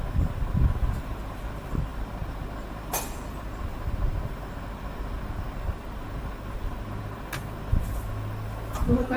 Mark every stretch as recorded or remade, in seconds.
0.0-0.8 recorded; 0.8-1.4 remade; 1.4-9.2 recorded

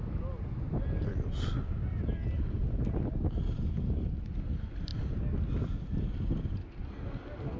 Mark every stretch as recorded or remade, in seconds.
0.0-7.6 recorded

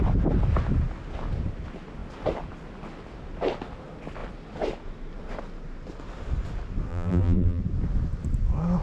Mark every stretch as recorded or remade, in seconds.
0.0-6.9 recorded; 6.9-7.6 remade; 7.6-8.8 recorded

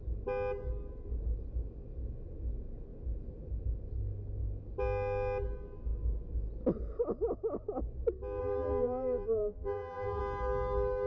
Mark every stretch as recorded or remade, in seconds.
0.0-8.4 recorded; 8.4-10.2 remade; 10.2-11.1 recorded

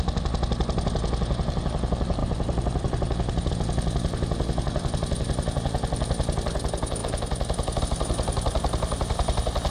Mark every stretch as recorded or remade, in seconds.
0.0-2.2 recorded; 2.2-3.5 remade; 3.5-9.7 recorded

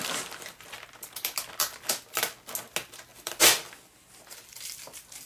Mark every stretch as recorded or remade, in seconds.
0.0-3.1 recorded; 3.1-3.7 remade; 3.7-5.3 recorded

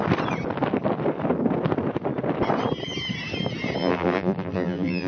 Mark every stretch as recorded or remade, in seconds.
0.0-3.8 recorded; 3.8-5.1 remade

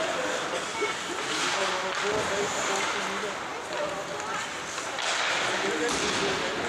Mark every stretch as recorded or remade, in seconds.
0.0-6.7 recorded